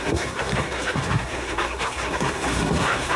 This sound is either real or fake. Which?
fake